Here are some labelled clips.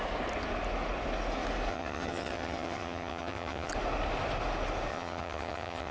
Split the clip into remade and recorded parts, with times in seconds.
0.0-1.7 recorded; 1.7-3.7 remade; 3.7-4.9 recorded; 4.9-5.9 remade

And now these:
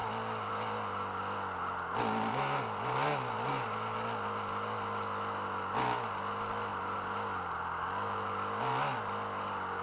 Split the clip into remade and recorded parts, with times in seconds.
0.0-9.8 recorded

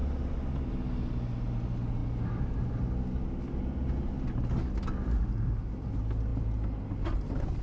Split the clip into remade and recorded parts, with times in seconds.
0.0-7.6 recorded

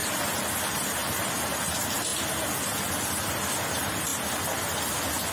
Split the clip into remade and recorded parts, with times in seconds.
0.0-0.6 recorded; 0.6-1.0 remade; 1.0-1.6 recorded; 1.6-2.1 remade; 2.1-2.9 recorded; 2.9-4.1 remade; 4.1-5.3 recorded

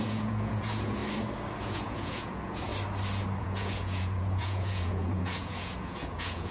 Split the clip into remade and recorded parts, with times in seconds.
0.0-1.0 remade; 1.0-1.6 recorded; 1.6-2.7 remade; 2.7-3.4 recorded; 3.4-6.5 remade

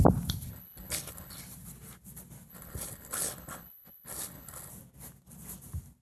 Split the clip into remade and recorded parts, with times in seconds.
0.0-0.5 recorded; 0.5-1.4 remade; 1.4-2.5 recorded; 2.5-4.7 remade; 4.7-6.0 recorded

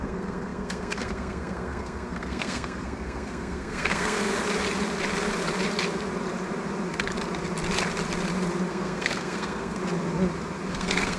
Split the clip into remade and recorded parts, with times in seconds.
0.0-4.3 remade; 4.3-8.7 recorded; 8.7-9.8 remade; 9.8-10.7 recorded; 10.7-11.2 remade